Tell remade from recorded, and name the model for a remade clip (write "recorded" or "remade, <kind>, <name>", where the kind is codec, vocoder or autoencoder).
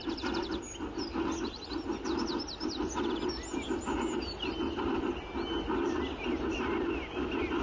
recorded